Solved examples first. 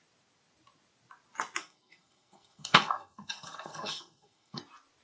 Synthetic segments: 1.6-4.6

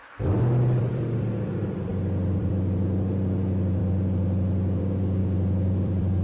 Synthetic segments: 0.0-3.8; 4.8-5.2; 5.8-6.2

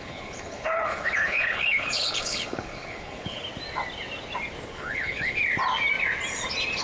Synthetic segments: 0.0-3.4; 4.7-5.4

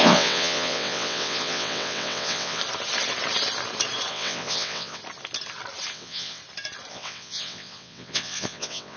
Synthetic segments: 0.0-2.6; 4.1-5.0; 5.9-6.4; 6.9-9.0